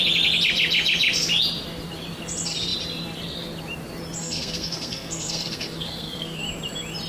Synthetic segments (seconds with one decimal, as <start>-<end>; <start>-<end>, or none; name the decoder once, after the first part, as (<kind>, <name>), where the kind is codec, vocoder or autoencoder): 4.2-6.4 (codec, SNAC)